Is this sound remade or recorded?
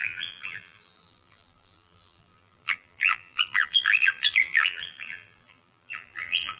remade